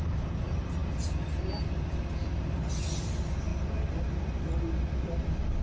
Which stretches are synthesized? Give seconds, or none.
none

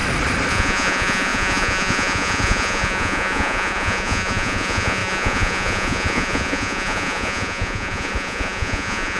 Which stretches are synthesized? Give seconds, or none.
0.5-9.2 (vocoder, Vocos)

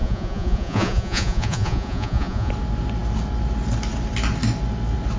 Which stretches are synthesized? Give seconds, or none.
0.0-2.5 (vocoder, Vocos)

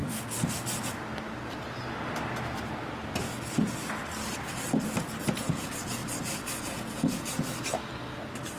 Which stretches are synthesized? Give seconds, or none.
5.2-6.0 (vocoder, Vocos); 6.6-7.5

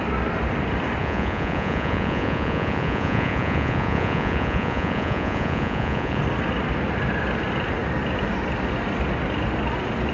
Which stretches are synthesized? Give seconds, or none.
1.0-6.2 (vocoder, Vocos)

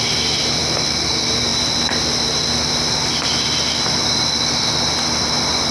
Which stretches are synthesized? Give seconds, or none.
none

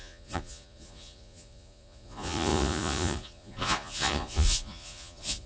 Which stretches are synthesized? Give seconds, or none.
0.0-5.5 (vocoder, Vocos)